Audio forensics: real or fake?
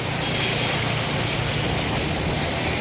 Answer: real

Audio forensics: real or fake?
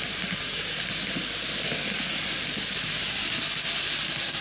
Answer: real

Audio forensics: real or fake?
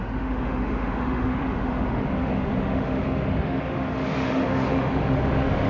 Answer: fake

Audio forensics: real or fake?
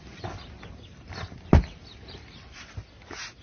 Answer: real